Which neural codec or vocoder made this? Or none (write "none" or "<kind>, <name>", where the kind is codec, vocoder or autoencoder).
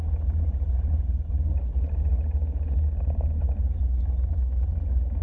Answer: none